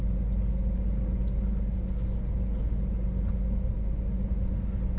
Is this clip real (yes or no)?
yes